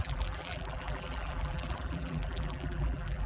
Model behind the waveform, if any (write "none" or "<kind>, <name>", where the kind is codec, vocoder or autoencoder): vocoder, BigVGAN v2